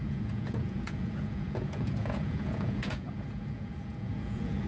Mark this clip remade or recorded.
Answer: remade